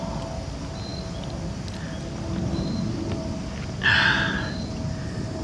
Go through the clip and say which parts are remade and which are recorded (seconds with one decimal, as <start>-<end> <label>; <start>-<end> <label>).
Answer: 0.0-5.4 recorded